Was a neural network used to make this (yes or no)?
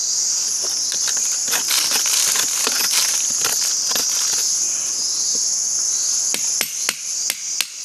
no